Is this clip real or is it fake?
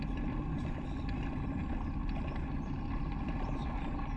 real